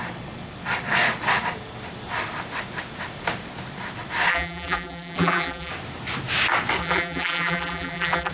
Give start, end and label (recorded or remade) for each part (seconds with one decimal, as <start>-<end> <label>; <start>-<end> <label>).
0.0-4.3 recorded; 4.3-5.7 remade; 5.7-6.8 recorded; 6.8-8.3 remade